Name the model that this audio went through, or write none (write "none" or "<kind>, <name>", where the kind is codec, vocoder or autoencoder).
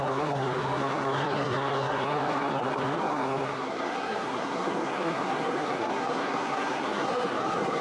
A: codec, SNAC